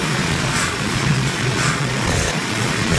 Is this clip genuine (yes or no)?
no